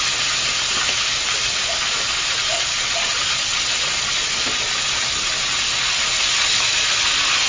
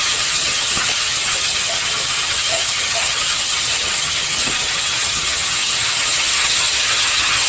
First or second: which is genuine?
first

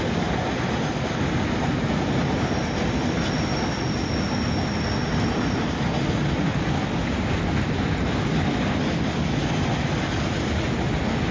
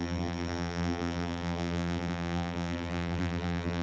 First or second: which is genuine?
first